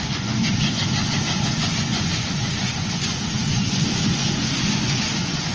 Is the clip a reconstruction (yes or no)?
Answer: yes